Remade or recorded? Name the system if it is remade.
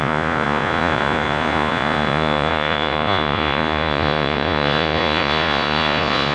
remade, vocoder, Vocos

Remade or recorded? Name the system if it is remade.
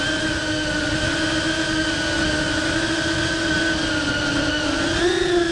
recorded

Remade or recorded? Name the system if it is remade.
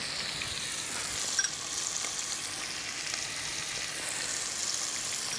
recorded